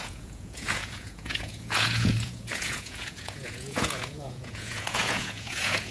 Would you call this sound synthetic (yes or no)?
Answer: yes